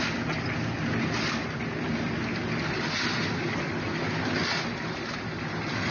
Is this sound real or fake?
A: real